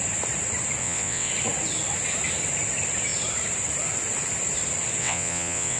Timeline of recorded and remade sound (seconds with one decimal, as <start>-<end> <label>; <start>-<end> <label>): 0.0-0.8 recorded; 0.8-1.3 remade; 1.3-5.0 recorded; 5.0-5.8 remade